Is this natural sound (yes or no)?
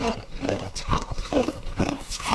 no